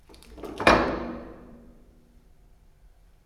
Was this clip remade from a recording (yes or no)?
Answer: yes